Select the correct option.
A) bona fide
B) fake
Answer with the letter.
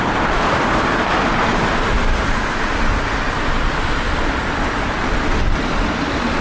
B